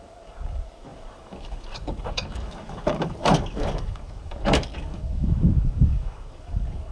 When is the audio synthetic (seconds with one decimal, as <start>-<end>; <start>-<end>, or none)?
0.0-6.9